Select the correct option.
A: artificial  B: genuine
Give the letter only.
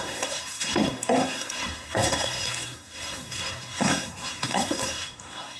A